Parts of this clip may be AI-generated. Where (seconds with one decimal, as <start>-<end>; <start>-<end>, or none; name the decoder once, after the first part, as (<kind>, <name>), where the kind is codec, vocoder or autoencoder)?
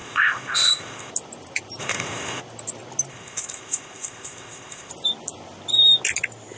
0.0-1.1 (codec, ZipCodec); 1.8-2.4; 3.1-4.9